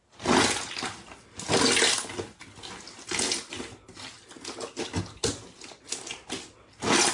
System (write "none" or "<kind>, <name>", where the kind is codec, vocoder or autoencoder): none